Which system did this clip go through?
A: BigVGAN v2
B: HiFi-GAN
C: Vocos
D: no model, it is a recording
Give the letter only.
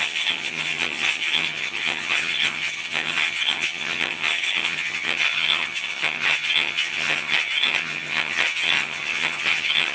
B